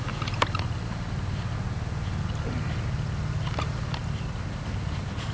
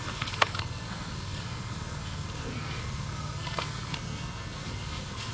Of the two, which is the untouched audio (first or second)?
first